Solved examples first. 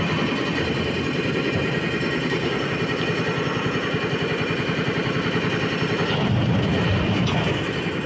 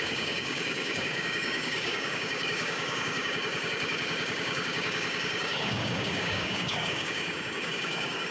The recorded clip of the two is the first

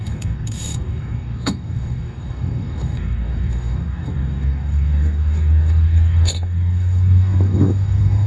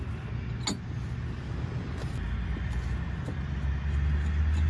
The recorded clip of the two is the second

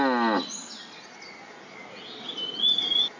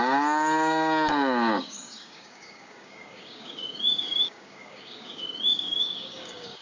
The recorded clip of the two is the first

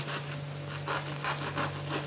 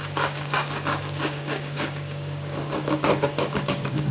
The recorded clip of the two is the first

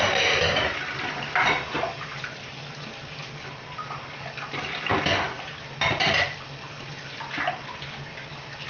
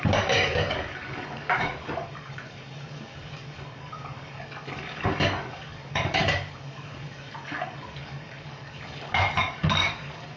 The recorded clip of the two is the first